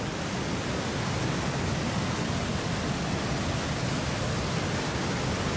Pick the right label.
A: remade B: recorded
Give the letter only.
B